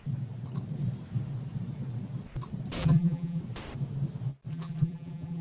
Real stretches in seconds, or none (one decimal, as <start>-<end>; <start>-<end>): 0.0-2.8; 3.4-4.5